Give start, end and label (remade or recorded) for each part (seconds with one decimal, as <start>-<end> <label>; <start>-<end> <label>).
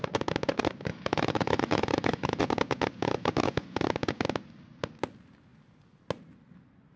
0.0-0.9 recorded; 0.9-2.4 remade; 2.4-7.0 recorded